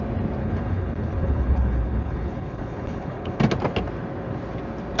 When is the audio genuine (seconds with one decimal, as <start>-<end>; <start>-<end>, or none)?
0.0-0.4; 3.4-5.0